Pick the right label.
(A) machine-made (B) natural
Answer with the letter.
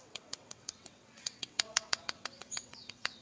A